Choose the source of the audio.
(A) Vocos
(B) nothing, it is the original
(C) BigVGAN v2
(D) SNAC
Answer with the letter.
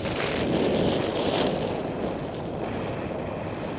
B